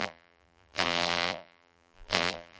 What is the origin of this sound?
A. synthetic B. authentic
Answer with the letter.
A